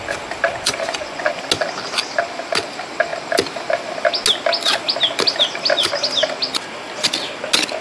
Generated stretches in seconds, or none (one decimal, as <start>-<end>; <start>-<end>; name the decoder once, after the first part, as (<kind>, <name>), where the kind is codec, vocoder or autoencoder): 0.5-1.5 (vocoder, Vocos)